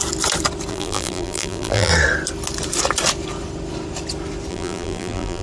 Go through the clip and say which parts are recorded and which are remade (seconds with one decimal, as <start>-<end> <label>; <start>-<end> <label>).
0.0-0.7 recorded; 0.7-1.9 remade; 1.9-4.5 recorded; 4.5-5.4 remade